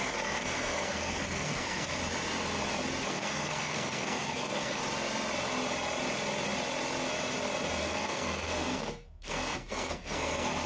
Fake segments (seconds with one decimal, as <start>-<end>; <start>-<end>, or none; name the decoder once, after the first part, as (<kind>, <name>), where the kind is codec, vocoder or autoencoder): 0.0-2.0 (codec, SNAC); 3.1-4.8; 7.8-10.7